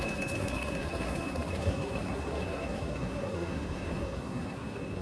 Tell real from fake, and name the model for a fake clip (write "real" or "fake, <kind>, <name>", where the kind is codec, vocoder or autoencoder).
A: fake, codec, SNAC